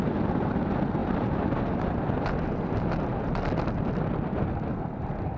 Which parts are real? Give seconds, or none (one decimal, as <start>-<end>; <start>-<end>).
0.0-1.0; 1.6-5.4